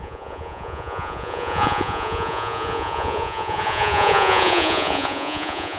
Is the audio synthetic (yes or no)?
yes